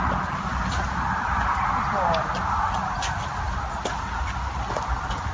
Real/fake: real